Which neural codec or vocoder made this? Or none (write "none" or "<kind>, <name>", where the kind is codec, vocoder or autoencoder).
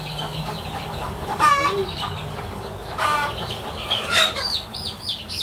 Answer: codec, DAC